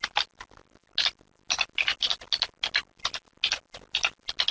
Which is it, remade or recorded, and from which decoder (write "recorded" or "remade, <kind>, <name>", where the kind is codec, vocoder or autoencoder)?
recorded